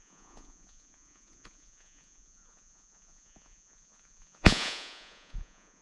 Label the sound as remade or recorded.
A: remade